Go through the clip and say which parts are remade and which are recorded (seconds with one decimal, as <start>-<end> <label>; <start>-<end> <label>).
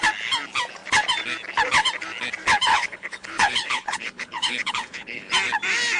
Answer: 0.0-2.7 recorded; 2.7-5.3 remade; 5.3-6.0 recorded